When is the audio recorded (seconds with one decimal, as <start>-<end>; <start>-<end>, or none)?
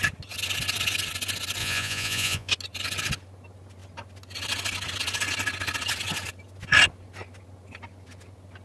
0.0-1.6; 2.5-8.6